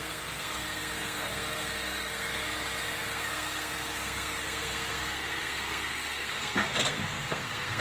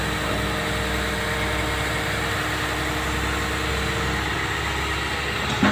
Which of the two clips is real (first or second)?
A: second